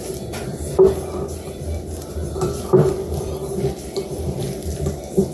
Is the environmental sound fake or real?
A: fake